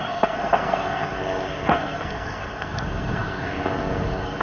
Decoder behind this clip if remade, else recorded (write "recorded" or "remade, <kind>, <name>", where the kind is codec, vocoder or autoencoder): remade, codec, SNAC